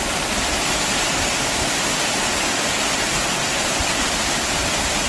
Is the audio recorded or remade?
recorded